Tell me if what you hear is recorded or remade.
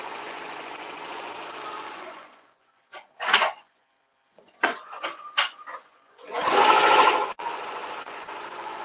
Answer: remade